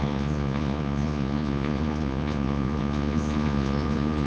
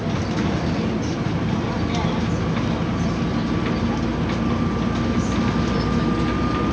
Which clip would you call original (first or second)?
second